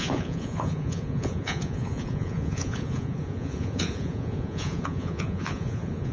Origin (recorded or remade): remade